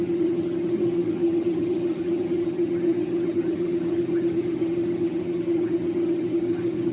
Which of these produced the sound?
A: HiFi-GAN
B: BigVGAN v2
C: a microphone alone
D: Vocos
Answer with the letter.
A